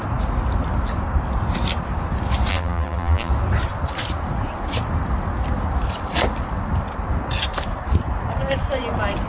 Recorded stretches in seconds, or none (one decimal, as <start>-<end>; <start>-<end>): 0.0-2.5; 3.3-9.3